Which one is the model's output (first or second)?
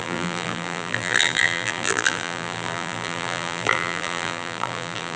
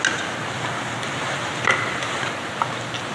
first